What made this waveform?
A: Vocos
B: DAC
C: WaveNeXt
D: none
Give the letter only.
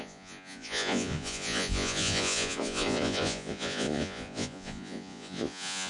A